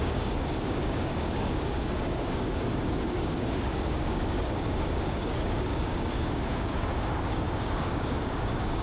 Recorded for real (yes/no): no